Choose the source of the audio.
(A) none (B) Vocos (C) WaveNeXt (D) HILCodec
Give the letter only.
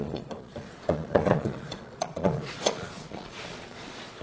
B